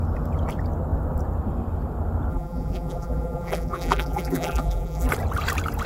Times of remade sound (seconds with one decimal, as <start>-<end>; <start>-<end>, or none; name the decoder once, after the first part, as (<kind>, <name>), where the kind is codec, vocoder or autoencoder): 2.3-5.1 (vocoder, BigVGAN v2)